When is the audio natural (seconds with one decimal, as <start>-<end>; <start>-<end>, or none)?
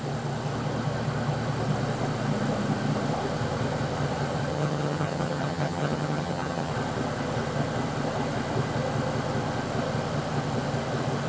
0.0-4.5; 6.7-11.3